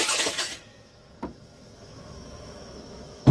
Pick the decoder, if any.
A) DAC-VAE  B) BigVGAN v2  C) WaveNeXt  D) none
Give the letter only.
A